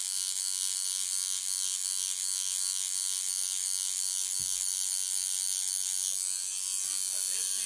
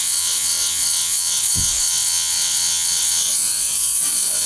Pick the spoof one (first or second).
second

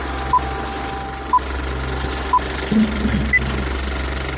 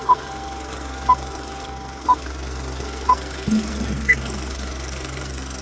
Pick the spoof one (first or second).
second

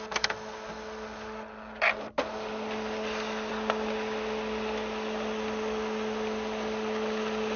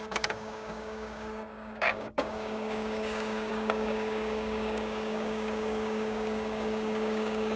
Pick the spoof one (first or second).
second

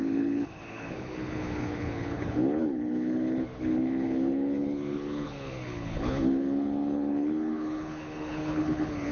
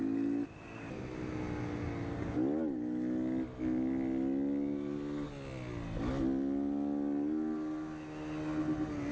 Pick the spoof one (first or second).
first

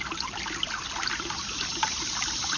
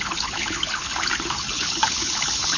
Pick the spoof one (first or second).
second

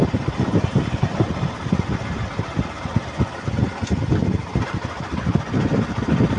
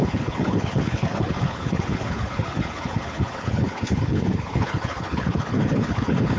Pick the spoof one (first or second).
second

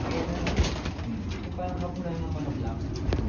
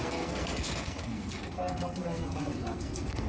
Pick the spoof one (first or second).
second